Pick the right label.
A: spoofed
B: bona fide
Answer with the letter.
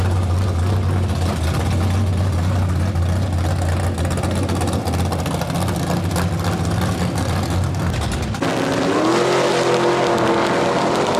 B